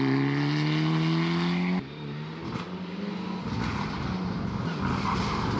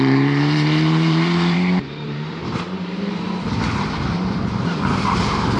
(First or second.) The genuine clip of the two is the first